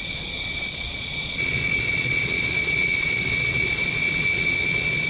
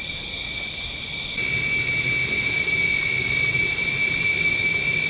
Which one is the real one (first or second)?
second